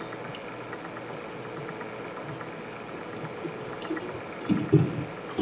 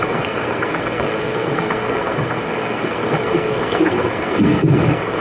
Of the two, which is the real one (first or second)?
first